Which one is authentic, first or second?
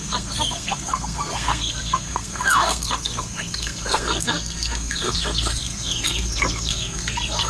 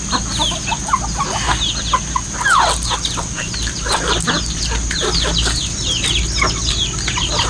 second